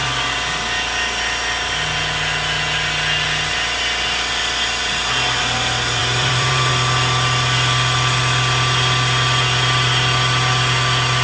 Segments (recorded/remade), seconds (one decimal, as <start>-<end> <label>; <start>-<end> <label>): 0.0-6.0 recorded; 6.0-6.7 remade; 6.7-11.2 recorded